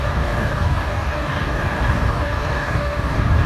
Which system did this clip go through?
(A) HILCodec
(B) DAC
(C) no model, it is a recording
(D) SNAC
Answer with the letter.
B